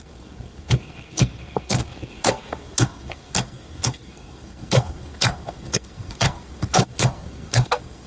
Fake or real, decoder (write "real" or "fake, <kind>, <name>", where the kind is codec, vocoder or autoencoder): fake, codec, SNAC